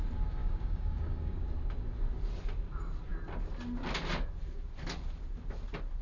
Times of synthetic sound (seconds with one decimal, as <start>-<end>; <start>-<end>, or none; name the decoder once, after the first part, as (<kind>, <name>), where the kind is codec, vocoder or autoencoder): 0.4-1.4 (codec, DAC)